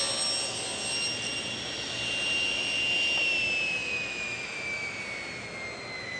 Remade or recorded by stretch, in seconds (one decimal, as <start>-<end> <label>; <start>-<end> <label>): 0.0-3.8 recorded; 3.8-5.0 remade; 5.0-6.2 recorded

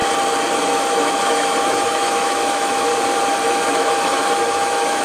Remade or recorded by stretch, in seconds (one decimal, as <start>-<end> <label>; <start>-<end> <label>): 0.0-0.6 recorded; 0.6-2.9 remade; 2.9-3.4 recorded; 3.4-5.0 remade

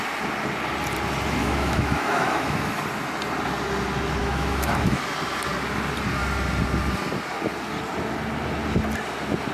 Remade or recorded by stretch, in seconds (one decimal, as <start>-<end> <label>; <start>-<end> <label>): 0.0-1.4 recorded; 1.4-2.8 remade; 2.8-4.2 recorded; 4.2-5.0 remade; 5.0-9.5 recorded

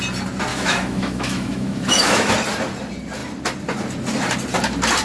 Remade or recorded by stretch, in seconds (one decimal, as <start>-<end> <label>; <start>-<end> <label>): 0.0-0.5 recorded; 0.5-2.3 remade; 2.3-5.0 recorded

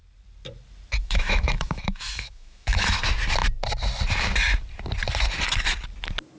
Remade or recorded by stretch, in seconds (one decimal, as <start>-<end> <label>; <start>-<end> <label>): 0.0-1.0 recorded; 1.0-3.0 remade; 3.0-6.4 recorded

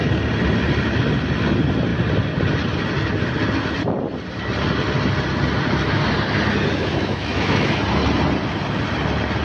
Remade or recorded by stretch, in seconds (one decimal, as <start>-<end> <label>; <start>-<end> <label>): 0.0-6.8 recorded; 6.8-7.8 remade; 7.8-9.4 recorded

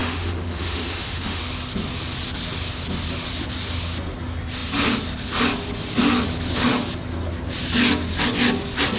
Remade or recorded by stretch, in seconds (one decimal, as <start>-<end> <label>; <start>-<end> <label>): 0.0-1.4 remade; 1.4-9.0 recorded